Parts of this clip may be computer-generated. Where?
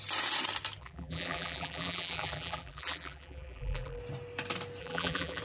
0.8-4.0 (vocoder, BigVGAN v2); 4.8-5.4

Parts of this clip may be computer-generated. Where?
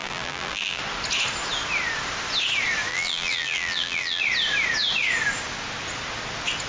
0.0-0.8 (vocoder, BigVGAN v2); 2.9-4.2